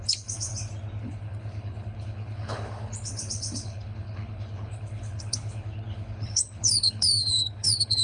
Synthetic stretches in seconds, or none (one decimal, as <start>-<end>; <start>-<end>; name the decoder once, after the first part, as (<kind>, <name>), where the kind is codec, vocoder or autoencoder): 0.0-0.5 (codec, HILCodec); 1.0-8.0